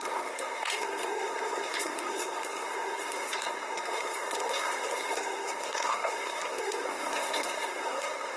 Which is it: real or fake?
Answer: fake